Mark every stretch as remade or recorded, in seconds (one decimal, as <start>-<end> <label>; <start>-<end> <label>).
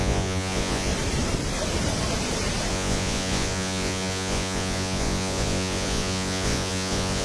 0.0-0.9 remade; 0.9-2.7 recorded; 2.7-7.2 remade